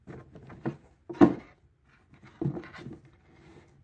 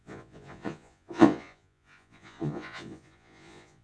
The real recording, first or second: first